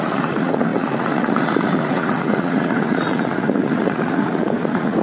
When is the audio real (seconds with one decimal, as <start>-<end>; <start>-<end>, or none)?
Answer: none